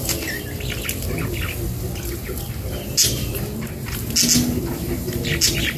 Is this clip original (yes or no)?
yes